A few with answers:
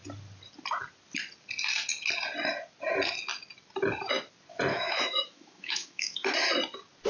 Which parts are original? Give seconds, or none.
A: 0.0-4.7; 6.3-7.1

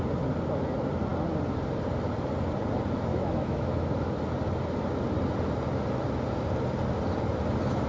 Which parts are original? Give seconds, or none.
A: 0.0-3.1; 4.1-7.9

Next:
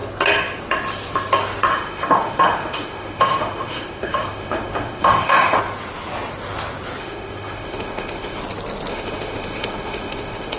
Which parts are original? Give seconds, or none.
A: 0.0-1.7; 5.6-7.0; 8.4-8.9